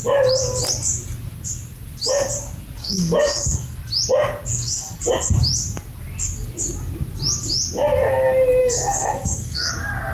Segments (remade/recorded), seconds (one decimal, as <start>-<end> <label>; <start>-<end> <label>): 0.0-2.8 recorded; 2.8-3.8 remade; 3.8-4.5 recorded; 4.5-5.0 remade; 5.0-8.6 recorded; 8.6-9.7 remade; 9.7-10.1 recorded